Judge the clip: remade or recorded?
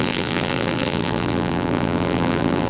remade